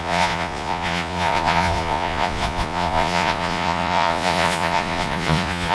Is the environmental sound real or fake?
fake